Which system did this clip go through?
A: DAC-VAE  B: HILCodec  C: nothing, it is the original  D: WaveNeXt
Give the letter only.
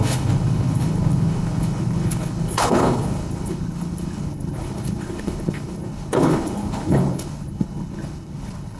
B